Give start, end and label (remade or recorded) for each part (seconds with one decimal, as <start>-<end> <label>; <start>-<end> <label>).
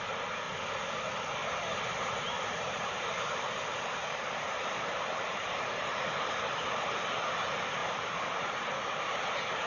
0.0-1.4 recorded; 1.4-3.6 remade; 3.6-4.0 recorded; 4.0-6.3 remade; 6.3-7.8 recorded; 7.8-9.7 remade